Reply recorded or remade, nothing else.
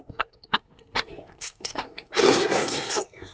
remade